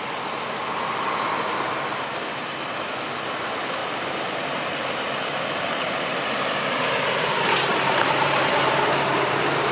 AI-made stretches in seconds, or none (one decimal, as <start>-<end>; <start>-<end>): 3.8-4.6; 7.7-9.7